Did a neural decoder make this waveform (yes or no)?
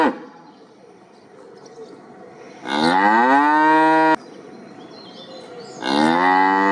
no